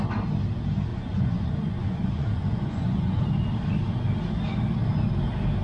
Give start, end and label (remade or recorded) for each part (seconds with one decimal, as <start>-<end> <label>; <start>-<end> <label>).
0.0-0.9 recorded; 0.9-3.2 remade; 3.2-5.6 recorded

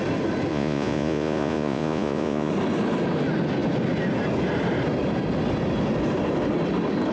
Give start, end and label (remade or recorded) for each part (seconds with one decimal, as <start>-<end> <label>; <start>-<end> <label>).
0.0-0.5 recorded; 0.5-2.5 remade; 2.5-7.1 recorded

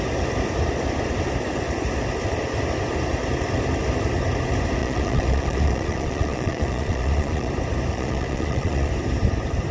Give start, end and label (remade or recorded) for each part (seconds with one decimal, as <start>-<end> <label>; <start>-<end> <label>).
0.0-4.8 recorded; 4.8-7.5 remade; 7.5-7.9 recorded; 7.9-8.9 remade; 8.9-9.7 recorded

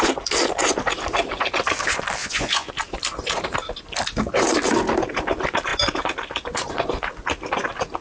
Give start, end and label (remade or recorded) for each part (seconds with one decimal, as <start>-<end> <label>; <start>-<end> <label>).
0.0-2.2 recorded; 2.2-2.7 remade; 2.7-8.0 recorded

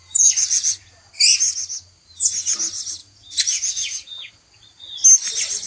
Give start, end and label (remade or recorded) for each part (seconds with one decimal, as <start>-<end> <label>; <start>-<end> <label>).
0.0-1.1 remade; 1.1-3.0 recorded; 3.0-4.3 remade; 4.3-5.7 recorded

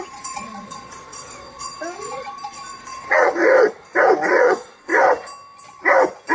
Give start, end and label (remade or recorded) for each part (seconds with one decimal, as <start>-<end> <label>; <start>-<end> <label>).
0.0-3.4 remade; 3.4-4.3 recorded; 4.3-4.9 remade; 4.9-6.3 recorded

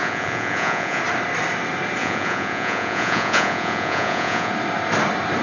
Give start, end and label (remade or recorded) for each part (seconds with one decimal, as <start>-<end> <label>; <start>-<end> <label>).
0.0-1.0 remade; 1.0-2.0 recorded; 2.0-4.5 remade; 4.5-5.4 recorded

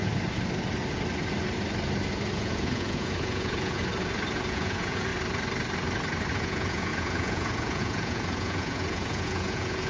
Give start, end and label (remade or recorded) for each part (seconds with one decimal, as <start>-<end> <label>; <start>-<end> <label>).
0.0-2.3 recorded; 2.3-3.8 remade; 3.8-4.5 recorded; 4.5-5.1 remade; 5.1-6.3 recorded; 6.3-9.9 remade